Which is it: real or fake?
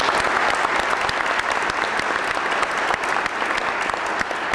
real